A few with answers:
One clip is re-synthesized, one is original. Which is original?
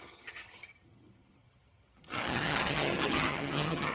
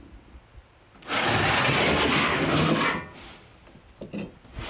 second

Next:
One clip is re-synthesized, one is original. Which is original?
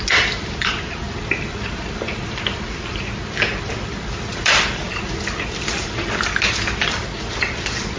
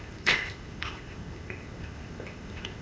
first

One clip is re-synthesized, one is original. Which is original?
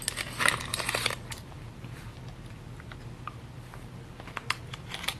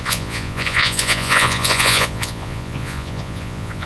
first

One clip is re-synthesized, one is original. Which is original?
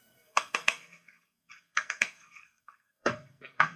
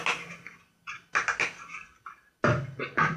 second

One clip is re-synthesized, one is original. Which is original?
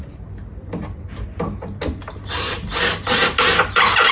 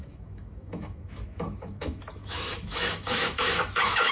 first